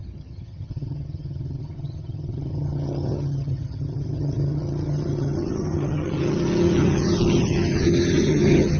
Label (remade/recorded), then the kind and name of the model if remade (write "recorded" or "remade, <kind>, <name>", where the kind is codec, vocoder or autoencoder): remade, vocoder, HiFi-GAN